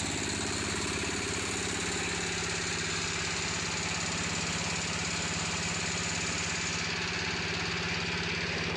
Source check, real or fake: real